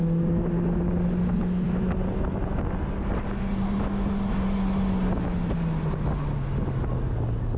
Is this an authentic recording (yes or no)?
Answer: yes